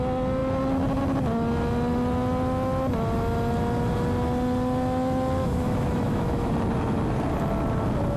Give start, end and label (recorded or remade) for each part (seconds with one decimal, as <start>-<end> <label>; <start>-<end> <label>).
0.0-5.4 recorded; 5.4-6.5 remade; 6.5-8.2 recorded